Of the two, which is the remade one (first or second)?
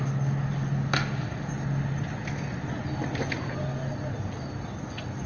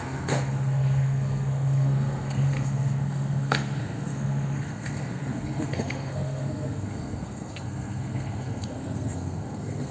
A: second